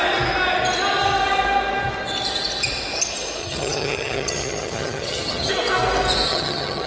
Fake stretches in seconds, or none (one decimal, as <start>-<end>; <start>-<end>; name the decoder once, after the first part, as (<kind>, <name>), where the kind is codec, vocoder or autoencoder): 3.4-5.5 (vocoder, HiFi-GAN); 6.3-6.9